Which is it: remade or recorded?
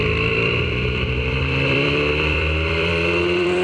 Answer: remade